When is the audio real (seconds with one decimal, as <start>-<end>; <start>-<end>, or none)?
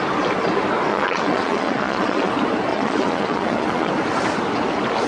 0.0-0.9; 2.3-2.7; 3.9-5.1